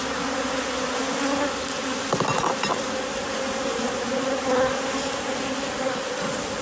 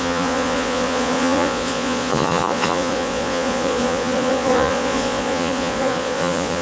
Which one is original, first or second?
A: first